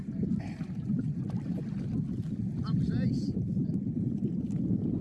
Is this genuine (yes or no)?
yes